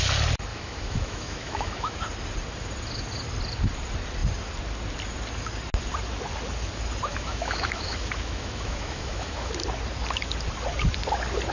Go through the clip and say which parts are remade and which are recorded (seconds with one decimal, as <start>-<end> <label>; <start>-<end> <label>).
0.0-0.5 recorded; 0.5-2.0 remade; 2.0-7.1 recorded; 7.1-9.5 remade; 9.5-11.5 recorded